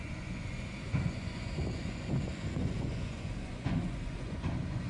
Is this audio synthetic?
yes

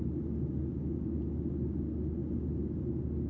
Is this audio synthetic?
no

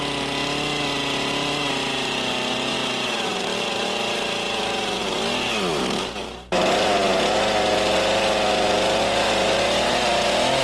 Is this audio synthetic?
no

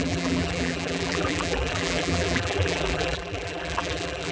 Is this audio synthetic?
yes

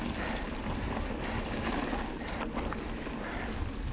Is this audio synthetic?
no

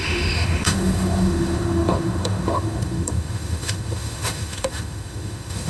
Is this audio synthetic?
yes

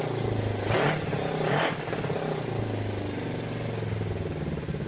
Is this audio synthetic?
no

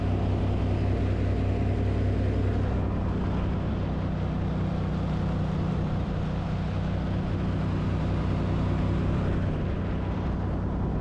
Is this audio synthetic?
no